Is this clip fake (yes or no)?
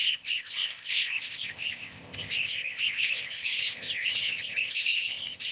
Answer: yes